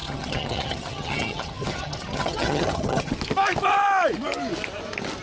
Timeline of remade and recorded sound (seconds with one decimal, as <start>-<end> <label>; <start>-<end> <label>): 0.0-3.1 remade; 3.1-5.2 recorded